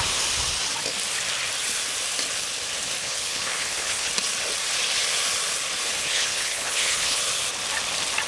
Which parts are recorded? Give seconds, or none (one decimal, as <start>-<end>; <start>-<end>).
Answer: 0.0-3.0; 4.1-6.0; 7.2-8.3